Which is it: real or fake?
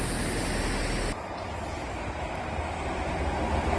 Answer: real